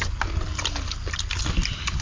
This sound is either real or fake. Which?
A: real